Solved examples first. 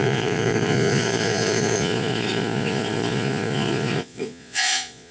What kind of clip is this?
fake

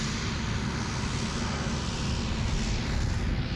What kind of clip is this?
real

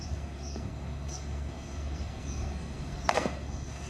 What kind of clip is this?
fake